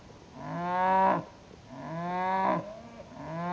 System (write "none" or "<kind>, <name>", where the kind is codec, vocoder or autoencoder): none